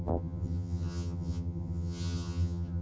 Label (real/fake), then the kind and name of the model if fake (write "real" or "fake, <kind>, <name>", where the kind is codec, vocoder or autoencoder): fake, vocoder, HiFi-GAN